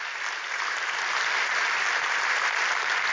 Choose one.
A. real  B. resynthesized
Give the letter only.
A